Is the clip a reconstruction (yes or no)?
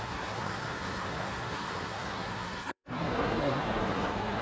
yes